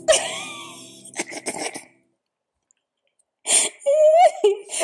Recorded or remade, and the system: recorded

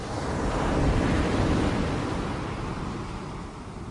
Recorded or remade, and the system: recorded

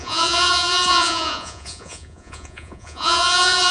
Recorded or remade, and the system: remade, vocoder, Vocos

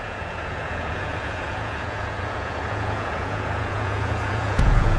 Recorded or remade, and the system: remade, vocoder, Vocos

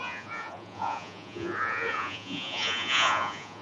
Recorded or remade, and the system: remade, vocoder, Vocos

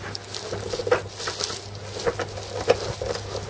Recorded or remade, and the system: recorded